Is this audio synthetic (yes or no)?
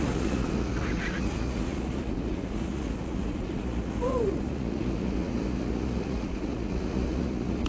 yes